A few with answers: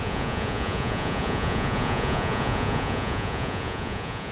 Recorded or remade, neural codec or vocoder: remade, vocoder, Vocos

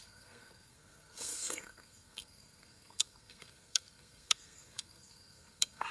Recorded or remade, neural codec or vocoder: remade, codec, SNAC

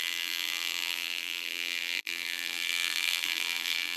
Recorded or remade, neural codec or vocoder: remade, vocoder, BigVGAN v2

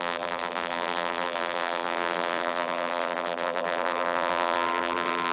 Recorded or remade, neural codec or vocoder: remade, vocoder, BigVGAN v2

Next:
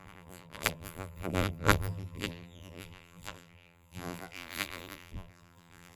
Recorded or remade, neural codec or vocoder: remade, vocoder, BigVGAN v2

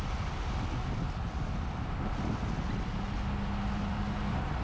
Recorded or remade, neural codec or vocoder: recorded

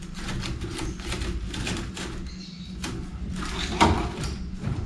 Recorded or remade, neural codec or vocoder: recorded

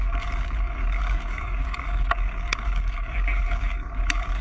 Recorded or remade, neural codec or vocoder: remade, codec, DAC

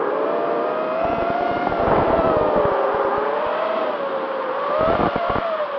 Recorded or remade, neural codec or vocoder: recorded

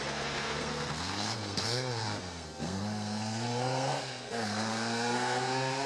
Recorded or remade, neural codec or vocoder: remade, codec, SNAC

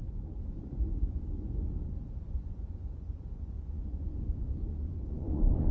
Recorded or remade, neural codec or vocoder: remade, vocoder, Vocos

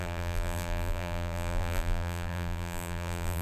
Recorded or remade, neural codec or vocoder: remade, vocoder, BigVGAN v2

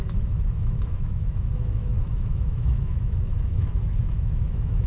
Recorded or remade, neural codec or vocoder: remade, autoencoder, DAC-VAE